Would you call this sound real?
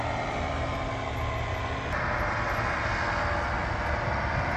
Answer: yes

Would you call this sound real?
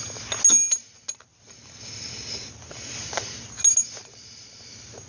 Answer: yes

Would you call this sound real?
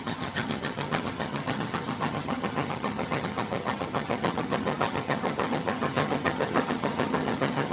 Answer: no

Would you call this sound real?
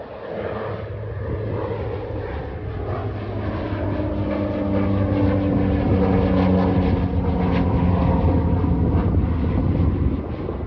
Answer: yes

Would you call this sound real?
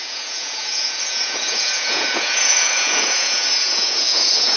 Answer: no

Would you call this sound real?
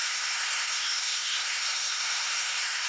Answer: no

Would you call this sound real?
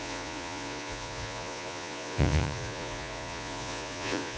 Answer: no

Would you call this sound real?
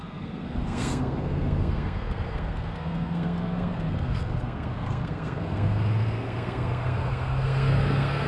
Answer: no